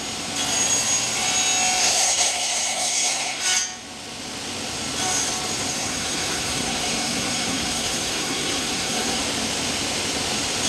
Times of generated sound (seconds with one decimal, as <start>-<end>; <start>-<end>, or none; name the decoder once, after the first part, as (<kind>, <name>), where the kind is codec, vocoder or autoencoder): 1.8-3.4 (codec, SNAC); 5.7-9.2